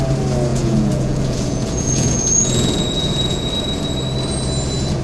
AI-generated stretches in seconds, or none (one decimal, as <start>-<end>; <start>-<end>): 0.5-3.5